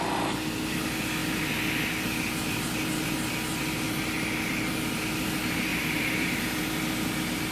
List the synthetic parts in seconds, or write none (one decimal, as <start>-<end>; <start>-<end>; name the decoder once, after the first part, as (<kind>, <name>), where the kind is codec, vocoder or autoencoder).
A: 5.7-6.6 (vocoder, BigVGAN v2)